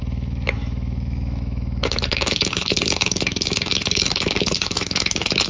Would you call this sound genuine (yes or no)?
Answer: no